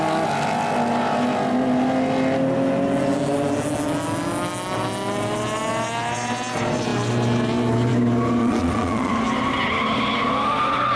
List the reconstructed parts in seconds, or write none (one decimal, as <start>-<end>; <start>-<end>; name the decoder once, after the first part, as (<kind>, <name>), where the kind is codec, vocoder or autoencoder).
8.4-9.1 (vocoder, Vocos)